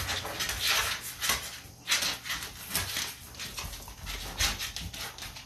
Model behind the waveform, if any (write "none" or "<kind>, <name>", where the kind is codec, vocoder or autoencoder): none